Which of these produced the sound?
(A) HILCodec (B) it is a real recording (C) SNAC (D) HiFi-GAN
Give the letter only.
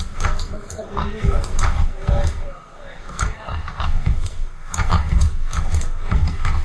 C